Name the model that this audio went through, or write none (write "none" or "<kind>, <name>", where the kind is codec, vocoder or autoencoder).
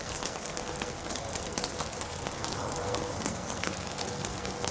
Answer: codec, SNAC